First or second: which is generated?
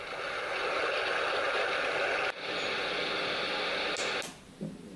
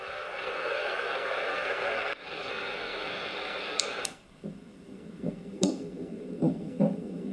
second